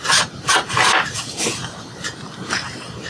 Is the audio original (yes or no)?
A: no